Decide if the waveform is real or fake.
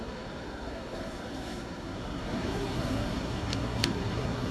fake